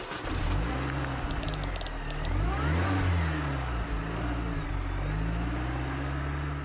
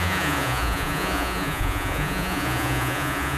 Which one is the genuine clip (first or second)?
first